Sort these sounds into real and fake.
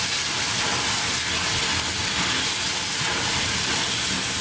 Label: real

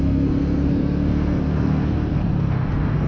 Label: fake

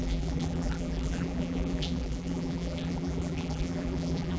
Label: fake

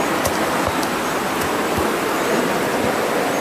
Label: real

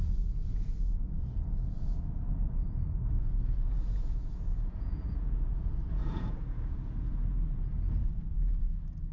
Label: fake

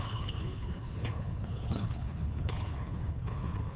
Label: fake